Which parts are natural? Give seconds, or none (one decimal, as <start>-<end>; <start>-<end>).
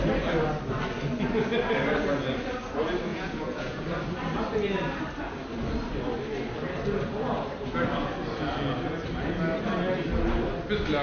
0.0-3.1; 3.8-11.0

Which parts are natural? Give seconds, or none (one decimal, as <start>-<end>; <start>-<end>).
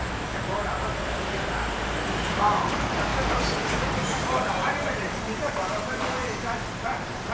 3.1-3.8; 6.2-6.8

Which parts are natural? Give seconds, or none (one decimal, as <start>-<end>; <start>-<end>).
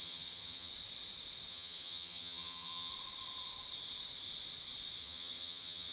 0.7-1.5; 2.9-5.0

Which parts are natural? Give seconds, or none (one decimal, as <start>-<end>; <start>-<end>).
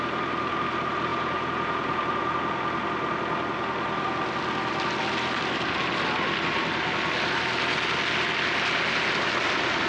0.0-1.1; 2.0-9.9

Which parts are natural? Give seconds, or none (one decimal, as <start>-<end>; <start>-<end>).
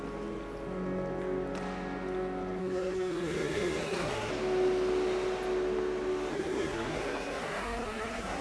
0.0-2.6; 4.3-6.3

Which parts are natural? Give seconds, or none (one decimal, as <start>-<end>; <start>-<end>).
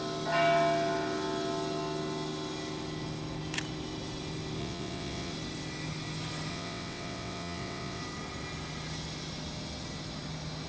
0.0-4.6; 5.3-6.5; 8.0-10.7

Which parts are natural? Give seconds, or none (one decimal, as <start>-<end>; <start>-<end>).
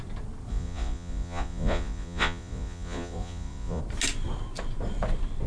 0.0-0.5; 3.8-5.5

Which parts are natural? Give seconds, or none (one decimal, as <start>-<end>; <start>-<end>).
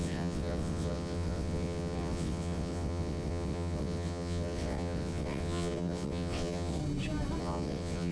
6.8-7.4